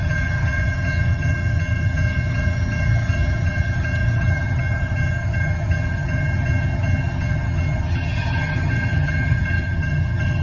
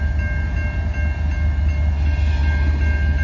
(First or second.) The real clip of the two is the second